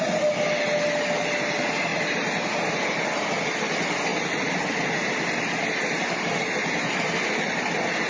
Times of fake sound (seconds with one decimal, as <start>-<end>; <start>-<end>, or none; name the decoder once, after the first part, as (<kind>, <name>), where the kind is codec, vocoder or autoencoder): none